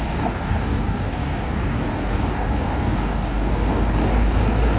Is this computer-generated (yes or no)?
yes